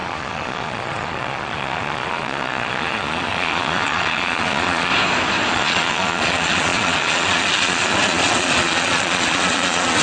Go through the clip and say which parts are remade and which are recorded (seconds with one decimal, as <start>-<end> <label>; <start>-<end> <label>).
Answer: 0.0-4.9 remade; 4.9-5.5 recorded; 5.5-10.0 remade